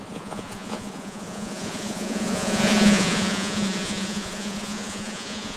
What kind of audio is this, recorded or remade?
remade